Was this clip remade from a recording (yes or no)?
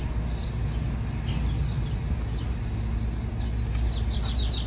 no